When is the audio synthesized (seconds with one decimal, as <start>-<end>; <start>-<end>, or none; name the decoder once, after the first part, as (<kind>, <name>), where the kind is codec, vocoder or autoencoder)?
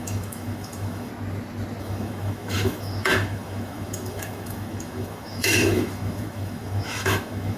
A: 0.0-1.1 (autoencoder, DAC-VAE); 1.8-7.6